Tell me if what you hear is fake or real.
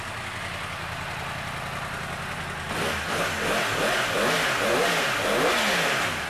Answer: real